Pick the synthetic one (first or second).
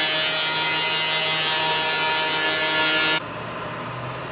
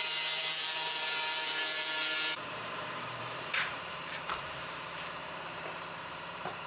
second